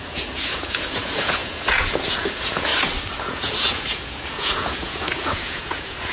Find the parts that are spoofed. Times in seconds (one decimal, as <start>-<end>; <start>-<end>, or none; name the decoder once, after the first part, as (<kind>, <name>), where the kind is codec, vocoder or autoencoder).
0.0-2.7 (vocoder, Vocos); 3.2-6.1